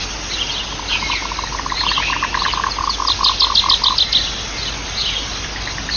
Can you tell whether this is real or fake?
real